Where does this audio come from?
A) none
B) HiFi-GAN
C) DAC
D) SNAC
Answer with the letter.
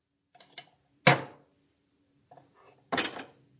A